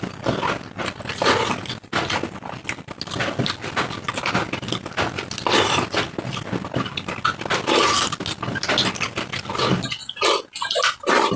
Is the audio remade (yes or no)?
no